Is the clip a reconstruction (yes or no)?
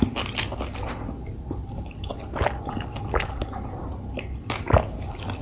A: no